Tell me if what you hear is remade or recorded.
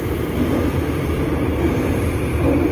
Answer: recorded